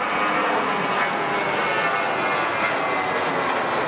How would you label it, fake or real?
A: real